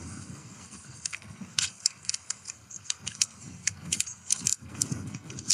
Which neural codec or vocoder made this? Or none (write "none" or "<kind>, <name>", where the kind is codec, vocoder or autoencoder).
codec, SNAC